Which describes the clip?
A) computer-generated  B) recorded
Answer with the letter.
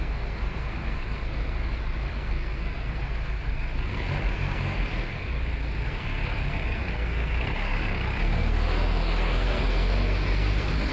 A